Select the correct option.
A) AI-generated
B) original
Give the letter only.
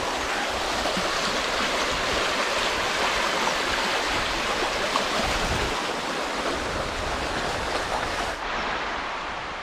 B